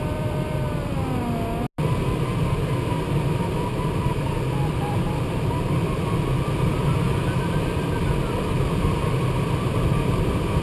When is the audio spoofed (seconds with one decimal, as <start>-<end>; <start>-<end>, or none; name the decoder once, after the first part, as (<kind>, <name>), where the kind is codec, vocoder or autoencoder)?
0.0-1.0 (vocoder, BigVGAN v2); 2.9-10.6